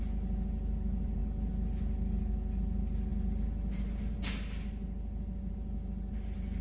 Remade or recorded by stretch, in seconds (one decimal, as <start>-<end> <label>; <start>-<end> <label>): 0.0-6.6 recorded